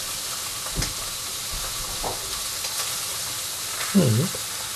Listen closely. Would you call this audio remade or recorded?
recorded